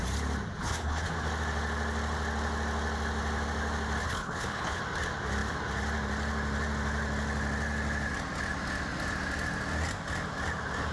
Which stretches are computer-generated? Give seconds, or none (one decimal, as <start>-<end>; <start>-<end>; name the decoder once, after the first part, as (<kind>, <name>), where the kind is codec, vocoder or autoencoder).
0.6-1.1 (codec, HILCodec); 4.0-4.8